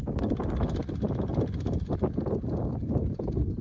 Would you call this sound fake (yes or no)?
no